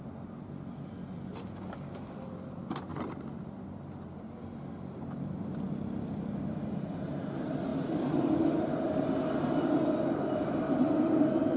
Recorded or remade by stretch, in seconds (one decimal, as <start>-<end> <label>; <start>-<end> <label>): 0.0-2.9 recorded; 2.9-3.4 remade; 3.4-7.7 recorded; 7.7-10.1 remade; 10.1-11.6 recorded